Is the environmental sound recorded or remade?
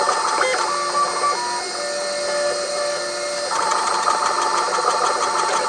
recorded